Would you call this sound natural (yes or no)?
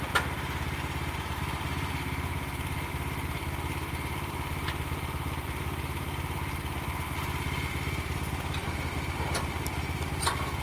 no